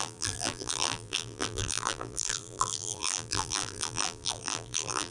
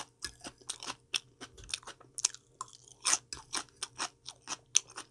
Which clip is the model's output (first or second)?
first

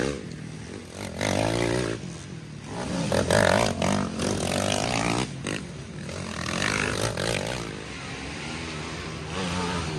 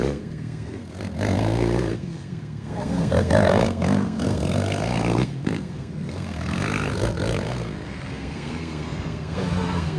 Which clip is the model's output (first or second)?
second